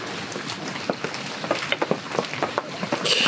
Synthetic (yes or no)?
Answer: no